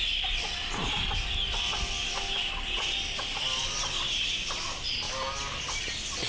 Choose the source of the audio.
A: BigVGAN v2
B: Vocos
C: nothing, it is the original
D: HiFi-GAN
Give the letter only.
C